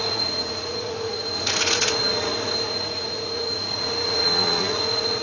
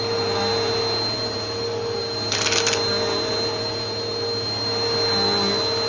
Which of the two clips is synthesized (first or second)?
first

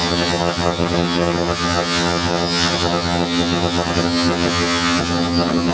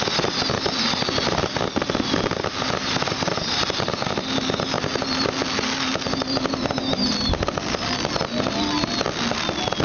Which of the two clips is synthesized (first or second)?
first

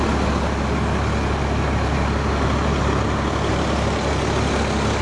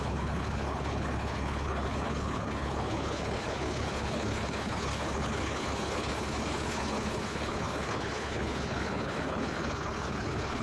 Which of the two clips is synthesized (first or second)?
second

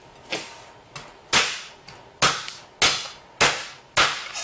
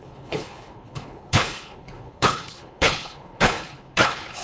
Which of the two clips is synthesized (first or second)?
second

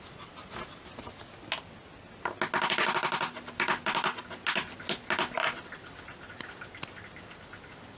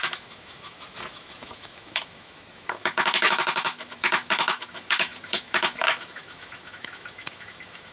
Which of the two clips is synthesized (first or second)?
second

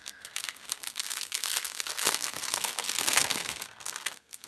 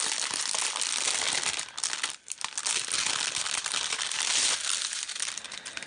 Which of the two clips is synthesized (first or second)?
first